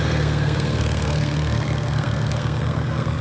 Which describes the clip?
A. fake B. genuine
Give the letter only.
A